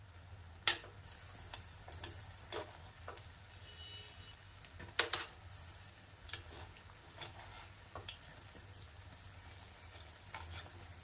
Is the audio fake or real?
real